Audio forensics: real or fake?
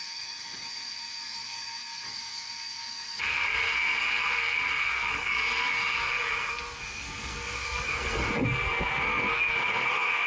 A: fake